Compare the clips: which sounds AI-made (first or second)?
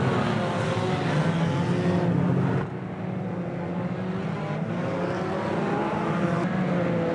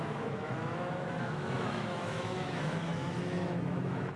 second